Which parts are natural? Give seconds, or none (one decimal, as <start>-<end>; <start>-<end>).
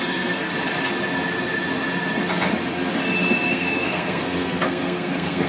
0.5-3.5